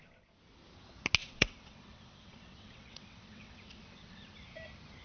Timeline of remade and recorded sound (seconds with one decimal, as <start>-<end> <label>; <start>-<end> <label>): 0.0-1.2 recorded; 1.2-4.2 remade; 4.2-5.0 recorded